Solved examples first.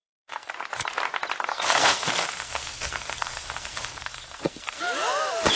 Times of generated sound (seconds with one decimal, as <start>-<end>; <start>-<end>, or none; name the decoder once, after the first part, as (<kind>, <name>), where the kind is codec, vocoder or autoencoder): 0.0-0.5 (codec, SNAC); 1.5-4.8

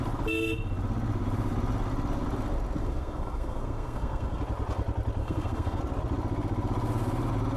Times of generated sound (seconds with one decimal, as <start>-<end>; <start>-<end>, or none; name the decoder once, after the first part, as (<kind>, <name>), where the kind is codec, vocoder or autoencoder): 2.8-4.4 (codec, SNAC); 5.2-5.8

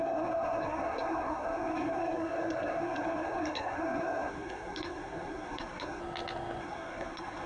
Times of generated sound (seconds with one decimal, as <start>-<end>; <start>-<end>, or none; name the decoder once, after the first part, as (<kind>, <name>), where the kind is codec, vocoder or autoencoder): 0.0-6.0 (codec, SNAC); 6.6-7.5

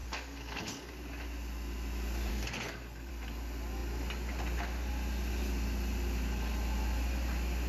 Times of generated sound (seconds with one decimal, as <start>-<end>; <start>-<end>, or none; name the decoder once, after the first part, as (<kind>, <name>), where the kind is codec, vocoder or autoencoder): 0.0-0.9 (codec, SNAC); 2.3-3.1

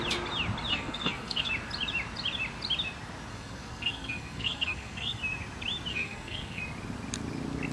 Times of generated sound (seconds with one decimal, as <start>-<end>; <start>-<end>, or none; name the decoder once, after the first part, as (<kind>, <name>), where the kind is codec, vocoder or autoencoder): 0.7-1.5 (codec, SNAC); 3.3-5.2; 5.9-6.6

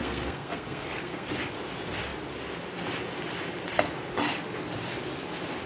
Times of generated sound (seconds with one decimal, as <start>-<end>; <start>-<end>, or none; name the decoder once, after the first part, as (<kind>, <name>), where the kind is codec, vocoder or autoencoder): 0.0-1.3 (codec, SNAC)

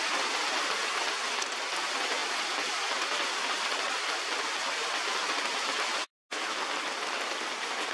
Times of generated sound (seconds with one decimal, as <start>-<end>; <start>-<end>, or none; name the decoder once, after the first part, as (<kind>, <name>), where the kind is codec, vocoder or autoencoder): none